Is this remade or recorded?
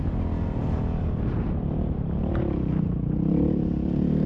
recorded